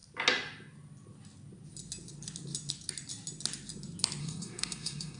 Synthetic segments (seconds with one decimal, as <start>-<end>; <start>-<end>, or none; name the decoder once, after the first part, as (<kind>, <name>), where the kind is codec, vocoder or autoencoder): 4.2-5.2 (codec, SNAC)